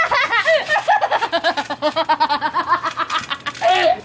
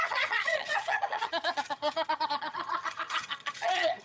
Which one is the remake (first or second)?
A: second